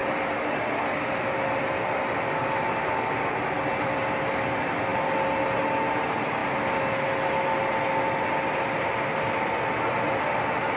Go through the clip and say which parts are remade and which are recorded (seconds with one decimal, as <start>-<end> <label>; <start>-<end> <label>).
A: 0.0-10.8 recorded